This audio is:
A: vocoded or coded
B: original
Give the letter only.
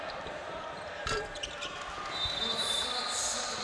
A